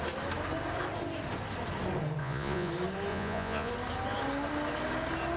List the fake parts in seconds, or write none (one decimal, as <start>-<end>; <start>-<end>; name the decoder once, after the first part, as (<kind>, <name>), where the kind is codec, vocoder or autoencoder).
2.2-2.7 (vocoder, Vocos); 3.1-3.7